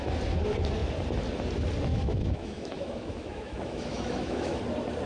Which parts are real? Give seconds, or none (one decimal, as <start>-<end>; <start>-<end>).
0.0-1.9; 4.6-5.1